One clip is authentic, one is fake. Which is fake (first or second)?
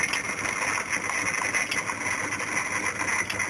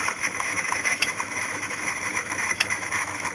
second